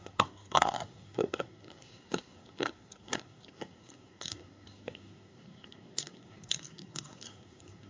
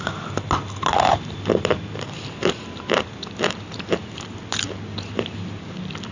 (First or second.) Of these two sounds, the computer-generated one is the first